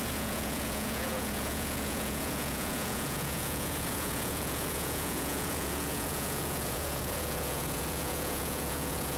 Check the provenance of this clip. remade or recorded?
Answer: remade